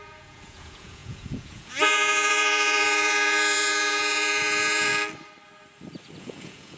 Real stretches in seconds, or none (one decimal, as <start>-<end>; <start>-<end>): 4.9-6.2